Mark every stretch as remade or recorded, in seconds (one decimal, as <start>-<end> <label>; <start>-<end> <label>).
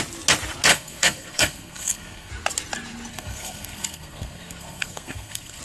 0.0-0.7 recorded; 0.7-2.3 remade; 2.3-3.1 recorded; 3.1-5.6 remade